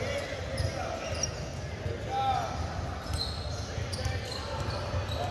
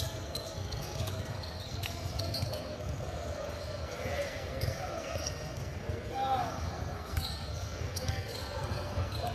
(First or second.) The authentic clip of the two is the first